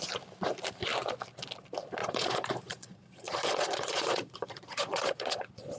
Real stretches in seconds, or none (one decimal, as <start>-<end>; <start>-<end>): 0.0-2.0